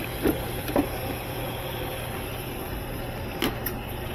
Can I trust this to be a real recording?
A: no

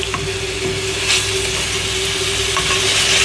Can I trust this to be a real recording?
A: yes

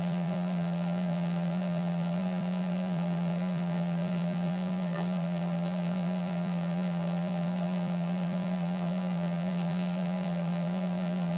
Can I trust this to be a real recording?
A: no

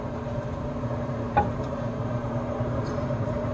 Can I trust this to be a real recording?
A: no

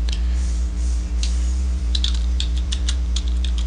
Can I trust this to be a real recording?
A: no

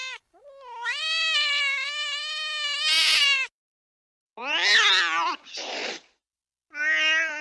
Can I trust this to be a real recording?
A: yes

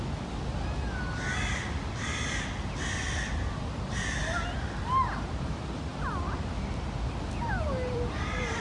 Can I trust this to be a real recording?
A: yes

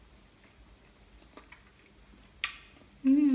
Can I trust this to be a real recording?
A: yes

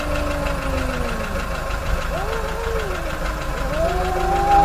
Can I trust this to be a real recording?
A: yes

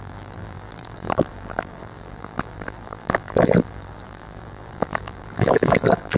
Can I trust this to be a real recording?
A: no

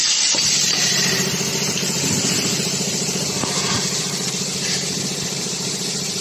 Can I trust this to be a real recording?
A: no